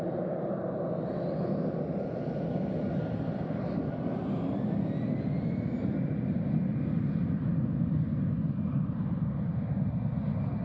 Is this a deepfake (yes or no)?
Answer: no